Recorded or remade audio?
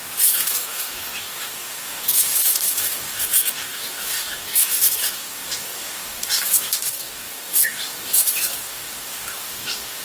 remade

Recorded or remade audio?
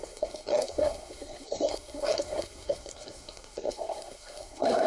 remade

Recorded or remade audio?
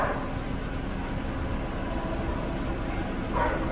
recorded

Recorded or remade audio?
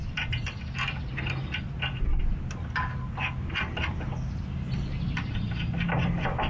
recorded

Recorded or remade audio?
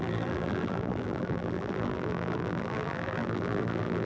remade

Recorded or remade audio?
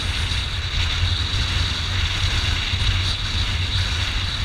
recorded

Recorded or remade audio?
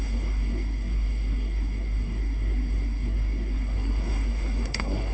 remade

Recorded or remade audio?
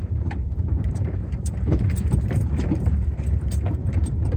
remade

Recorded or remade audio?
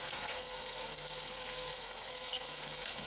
remade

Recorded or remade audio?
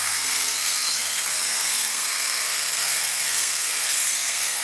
remade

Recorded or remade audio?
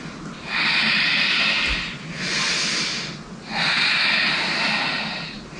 recorded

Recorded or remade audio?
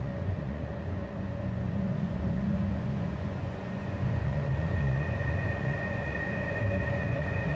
remade